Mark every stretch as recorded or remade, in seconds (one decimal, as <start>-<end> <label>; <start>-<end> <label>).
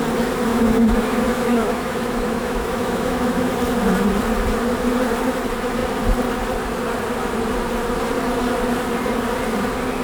0.0-0.5 recorded; 0.5-3.5 remade; 3.5-10.0 recorded